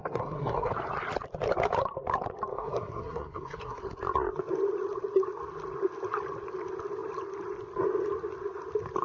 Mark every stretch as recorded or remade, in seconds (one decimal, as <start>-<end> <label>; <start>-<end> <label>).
0.0-0.7 remade; 0.7-2.5 recorded; 2.5-3.8 remade; 3.8-9.0 recorded